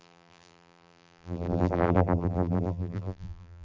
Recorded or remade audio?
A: remade